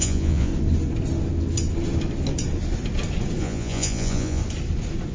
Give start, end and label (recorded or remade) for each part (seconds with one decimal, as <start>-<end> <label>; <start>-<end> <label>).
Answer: 0.0-0.5 remade; 0.5-3.4 recorded; 3.4-4.4 remade; 4.4-5.1 recorded